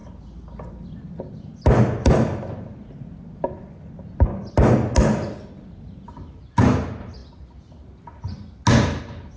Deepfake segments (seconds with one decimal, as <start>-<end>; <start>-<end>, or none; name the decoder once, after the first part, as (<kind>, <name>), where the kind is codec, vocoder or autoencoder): none